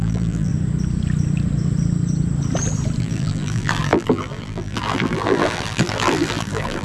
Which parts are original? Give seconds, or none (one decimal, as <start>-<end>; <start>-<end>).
0.5-3.0